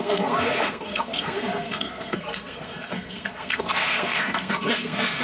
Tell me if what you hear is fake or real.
fake